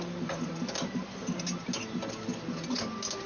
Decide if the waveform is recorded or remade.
recorded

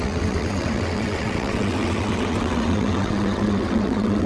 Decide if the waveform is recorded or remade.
remade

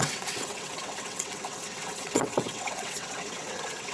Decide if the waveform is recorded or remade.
remade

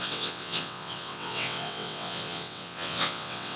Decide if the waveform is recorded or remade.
remade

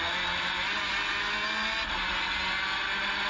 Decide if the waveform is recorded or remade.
recorded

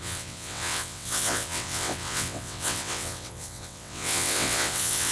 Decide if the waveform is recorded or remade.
remade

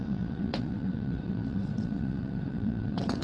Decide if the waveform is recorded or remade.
remade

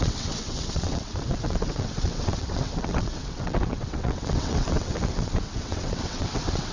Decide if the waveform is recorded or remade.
remade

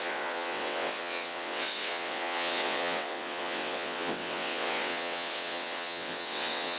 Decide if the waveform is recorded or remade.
remade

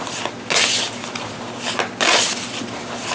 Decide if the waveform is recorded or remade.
recorded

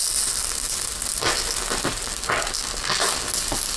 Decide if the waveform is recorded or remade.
recorded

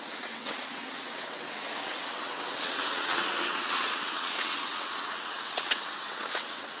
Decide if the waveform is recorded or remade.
remade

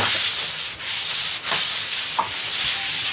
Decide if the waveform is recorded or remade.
recorded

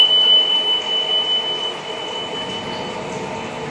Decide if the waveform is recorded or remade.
recorded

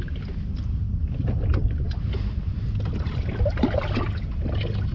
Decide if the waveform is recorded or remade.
recorded